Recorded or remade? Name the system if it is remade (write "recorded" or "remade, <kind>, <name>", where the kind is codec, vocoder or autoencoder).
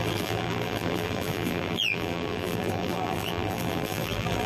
remade, vocoder, BigVGAN v2